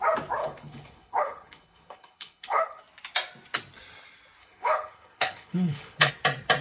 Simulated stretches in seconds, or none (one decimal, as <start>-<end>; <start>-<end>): 0.4-2.8; 4.4-6.1